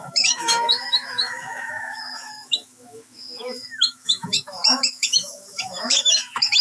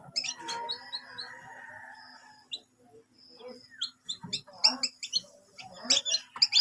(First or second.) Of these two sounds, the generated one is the first